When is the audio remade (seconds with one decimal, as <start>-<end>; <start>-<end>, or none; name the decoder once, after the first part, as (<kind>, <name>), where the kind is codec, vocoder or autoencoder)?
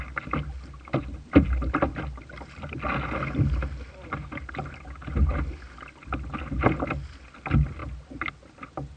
none